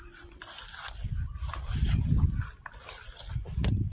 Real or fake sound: fake